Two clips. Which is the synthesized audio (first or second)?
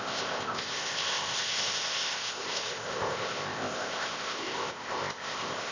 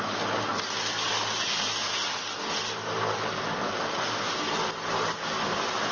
first